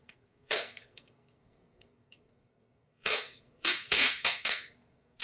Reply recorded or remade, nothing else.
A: remade